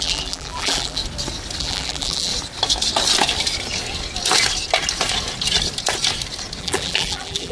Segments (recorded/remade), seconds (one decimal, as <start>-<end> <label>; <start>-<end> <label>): 0.0-1.0 remade; 1.0-1.6 recorded; 1.6-2.3 remade; 2.3-6.6 recorded; 6.6-7.5 remade